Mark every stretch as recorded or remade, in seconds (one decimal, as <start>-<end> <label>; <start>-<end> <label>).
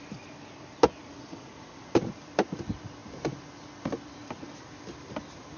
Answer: 0.0-1.2 recorded; 1.2-1.8 remade; 1.8-5.6 recorded